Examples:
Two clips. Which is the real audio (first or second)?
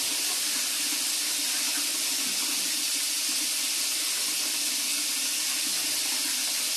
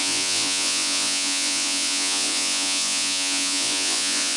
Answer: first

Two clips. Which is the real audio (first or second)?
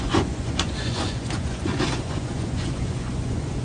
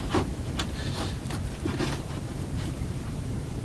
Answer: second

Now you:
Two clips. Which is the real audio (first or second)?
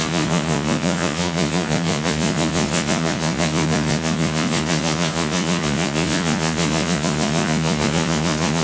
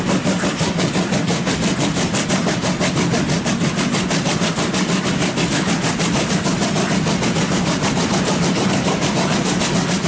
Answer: second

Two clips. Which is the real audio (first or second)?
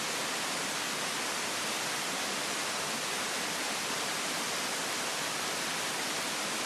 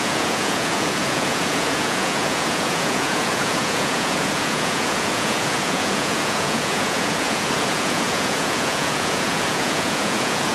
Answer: first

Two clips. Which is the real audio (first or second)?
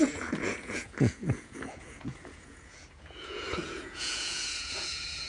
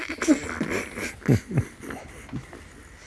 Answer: second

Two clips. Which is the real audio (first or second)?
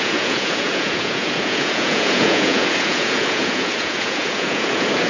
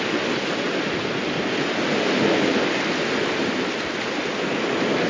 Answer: second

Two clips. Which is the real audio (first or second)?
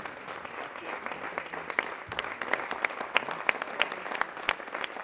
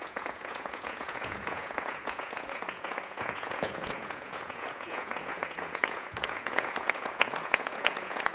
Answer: first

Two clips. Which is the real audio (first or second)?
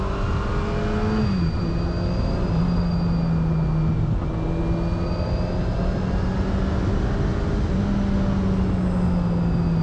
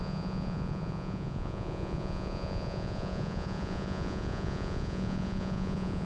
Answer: first